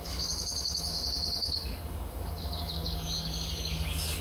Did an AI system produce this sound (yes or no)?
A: yes